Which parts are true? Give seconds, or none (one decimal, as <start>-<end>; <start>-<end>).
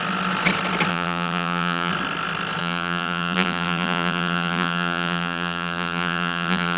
0.0-0.9; 1.9-2.6